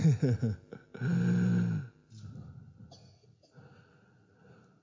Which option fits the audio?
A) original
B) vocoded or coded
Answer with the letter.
A